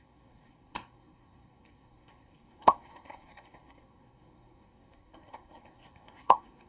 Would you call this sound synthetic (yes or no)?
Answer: yes